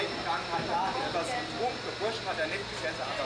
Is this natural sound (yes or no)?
yes